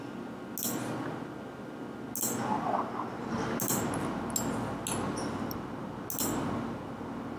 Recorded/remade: recorded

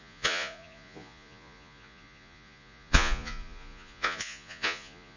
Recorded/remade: remade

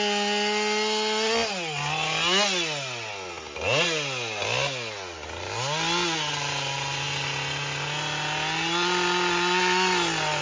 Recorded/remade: recorded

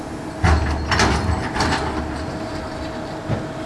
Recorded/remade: recorded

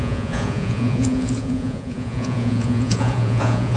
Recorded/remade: remade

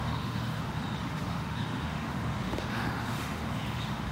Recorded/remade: remade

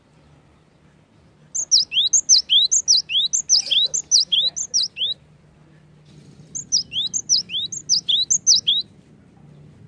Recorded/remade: recorded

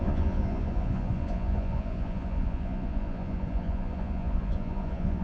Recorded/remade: remade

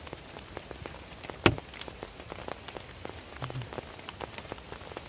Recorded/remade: recorded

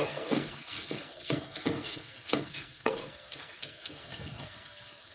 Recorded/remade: remade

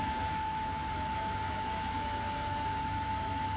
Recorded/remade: remade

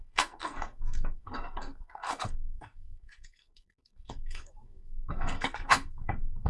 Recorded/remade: remade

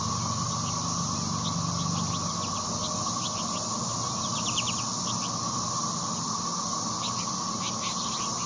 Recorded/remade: recorded